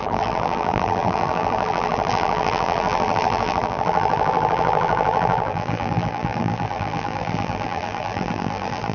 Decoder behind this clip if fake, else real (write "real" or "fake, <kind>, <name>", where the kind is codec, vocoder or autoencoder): fake, vocoder, BigVGAN v2